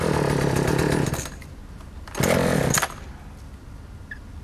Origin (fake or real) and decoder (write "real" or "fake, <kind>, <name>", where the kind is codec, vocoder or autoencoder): real